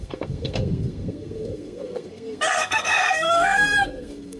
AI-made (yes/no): yes